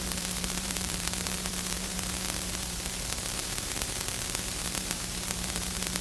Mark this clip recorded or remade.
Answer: remade